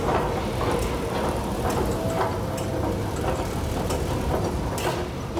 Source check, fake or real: real